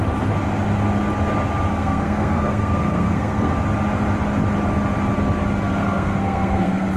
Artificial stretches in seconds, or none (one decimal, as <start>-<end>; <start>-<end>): 1.7-3.6; 5.7-7.0